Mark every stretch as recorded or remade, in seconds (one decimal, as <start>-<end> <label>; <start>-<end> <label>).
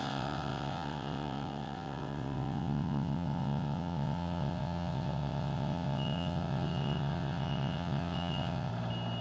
0.0-8.7 remade; 8.7-9.2 recorded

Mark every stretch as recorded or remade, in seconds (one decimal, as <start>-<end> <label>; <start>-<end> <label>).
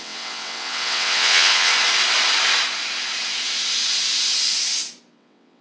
0.0-1.7 remade; 1.7-5.1 recorded; 5.1-5.6 remade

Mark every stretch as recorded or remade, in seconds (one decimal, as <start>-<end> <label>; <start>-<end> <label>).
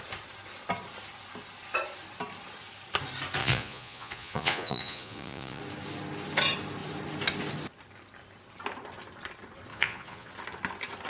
0.0-3.4 recorded; 3.4-5.6 remade; 5.6-9.7 recorded; 9.7-10.3 remade; 10.3-11.1 recorded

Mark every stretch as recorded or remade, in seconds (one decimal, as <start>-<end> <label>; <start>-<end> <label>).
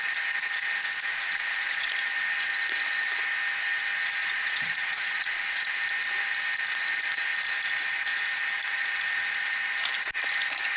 0.0-1.1 recorded; 1.1-1.9 remade; 1.9-4.2 recorded; 4.2-5.8 remade; 5.8-10.8 recorded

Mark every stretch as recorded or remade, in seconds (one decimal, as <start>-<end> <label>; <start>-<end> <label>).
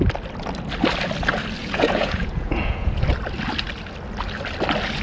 0.0-1.6 recorded; 1.6-3.0 remade; 3.0-5.0 recorded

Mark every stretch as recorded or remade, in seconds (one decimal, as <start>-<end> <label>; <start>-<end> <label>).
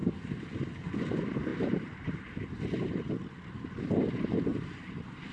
0.0-1.5 recorded; 1.5-3.1 remade; 3.1-4.5 recorded; 4.5-5.3 remade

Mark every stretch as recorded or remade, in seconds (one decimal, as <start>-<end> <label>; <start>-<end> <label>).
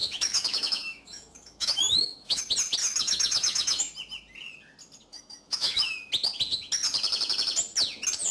0.0-2.4 remade; 2.4-2.8 recorded; 2.8-3.8 remade; 3.8-5.1 recorded; 5.1-5.9 remade; 5.9-8.3 recorded